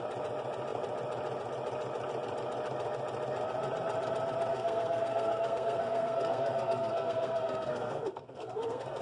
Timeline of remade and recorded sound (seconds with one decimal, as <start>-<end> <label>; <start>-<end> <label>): 0.0-4.5 recorded; 4.5-9.0 remade